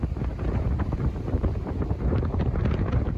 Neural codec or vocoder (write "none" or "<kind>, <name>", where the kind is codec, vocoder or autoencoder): vocoder, BigVGAN v2